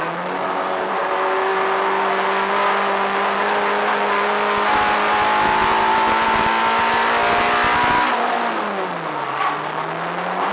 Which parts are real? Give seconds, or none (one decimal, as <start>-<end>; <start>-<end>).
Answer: 0.0-10.5